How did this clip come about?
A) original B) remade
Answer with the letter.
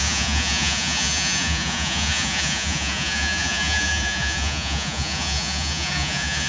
B